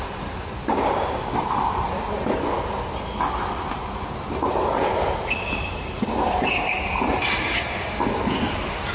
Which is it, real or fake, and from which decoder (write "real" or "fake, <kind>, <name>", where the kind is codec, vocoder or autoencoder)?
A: real